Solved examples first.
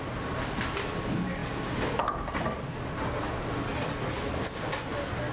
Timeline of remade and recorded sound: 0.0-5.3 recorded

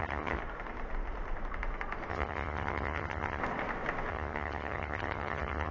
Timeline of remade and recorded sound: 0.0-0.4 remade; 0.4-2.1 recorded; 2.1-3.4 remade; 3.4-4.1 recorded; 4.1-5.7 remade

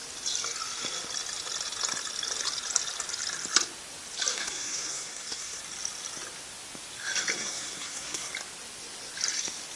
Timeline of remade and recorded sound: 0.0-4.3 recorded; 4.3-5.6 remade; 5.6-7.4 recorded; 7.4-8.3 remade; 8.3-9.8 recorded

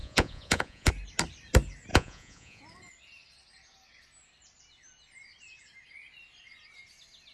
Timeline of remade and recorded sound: 0.0-0.9 remade; 0.9-1.9 recorded; 1.9-2.6 remade; 2.6-7.3 recorded

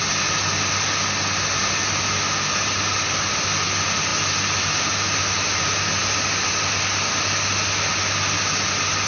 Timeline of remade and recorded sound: 0.0-9.1 recorded

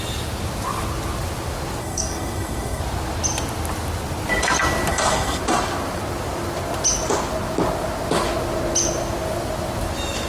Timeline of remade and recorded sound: 0.0-1.8 recorded; 1.8-2.8 remade; 2.8-4.9 recorded; 4.9-5.4 remade; 5.4-10.3 recorded

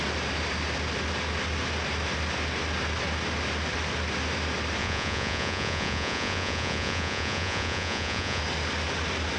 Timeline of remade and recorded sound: 0.0-4.8 recorded; 4.8-8.4 remade; 8.4-9.4 recorded

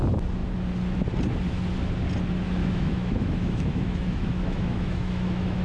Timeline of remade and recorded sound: 0.0-2.6 recorded; 2.6-5.6 remade